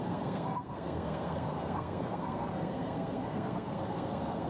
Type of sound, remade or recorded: remade